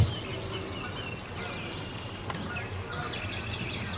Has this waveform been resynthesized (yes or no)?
no